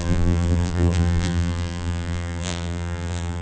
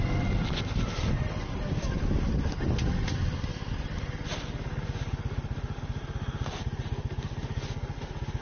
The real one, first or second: second